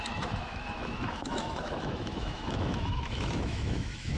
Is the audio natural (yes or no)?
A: no